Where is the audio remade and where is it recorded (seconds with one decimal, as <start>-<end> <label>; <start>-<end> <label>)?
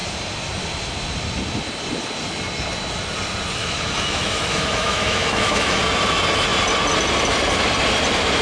0.0-3.6 recorded; 3.6-5.8 remade; 5.8-8.4 recorded